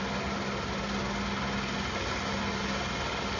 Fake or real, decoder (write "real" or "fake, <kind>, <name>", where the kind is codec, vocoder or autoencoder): real